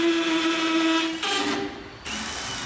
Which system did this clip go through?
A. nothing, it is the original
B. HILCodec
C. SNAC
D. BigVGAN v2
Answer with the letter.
A